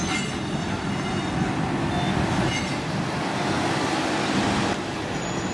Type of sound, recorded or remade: recorded